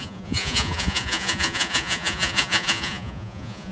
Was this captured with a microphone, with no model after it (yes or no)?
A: no